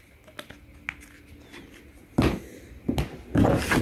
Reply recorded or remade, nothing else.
recorded